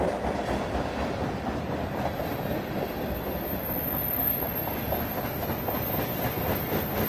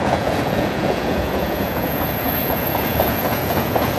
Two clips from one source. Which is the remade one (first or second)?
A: second